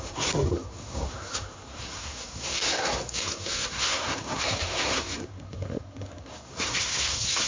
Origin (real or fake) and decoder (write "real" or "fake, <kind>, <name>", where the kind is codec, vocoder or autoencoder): fake, codec, SNAC